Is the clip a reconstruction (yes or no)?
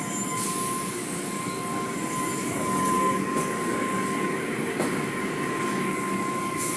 yes